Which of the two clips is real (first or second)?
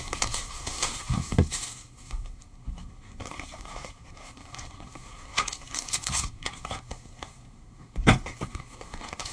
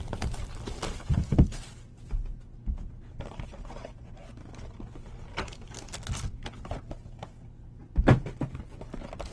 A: second